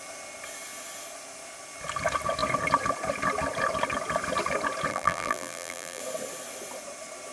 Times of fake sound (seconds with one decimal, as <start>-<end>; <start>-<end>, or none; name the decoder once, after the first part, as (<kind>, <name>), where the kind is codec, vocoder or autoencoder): 4.9-6.0 (vocoder, BigVGAN v2)